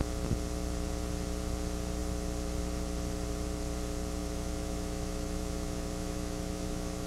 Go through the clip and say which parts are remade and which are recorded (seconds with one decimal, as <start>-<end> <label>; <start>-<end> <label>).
0.0-4.2 recorded; 4.2-7.1 remade